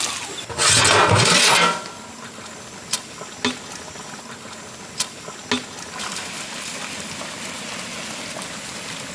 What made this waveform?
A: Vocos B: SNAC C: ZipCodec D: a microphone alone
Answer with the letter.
D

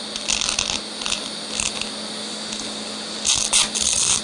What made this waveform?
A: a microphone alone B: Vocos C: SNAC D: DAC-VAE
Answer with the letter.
A